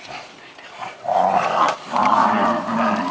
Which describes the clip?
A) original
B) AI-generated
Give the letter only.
A